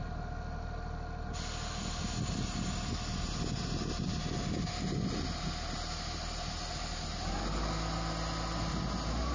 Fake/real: real